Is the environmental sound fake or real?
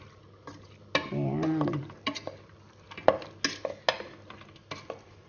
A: real